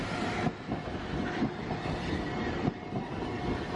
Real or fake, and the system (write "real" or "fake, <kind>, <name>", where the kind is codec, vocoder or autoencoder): real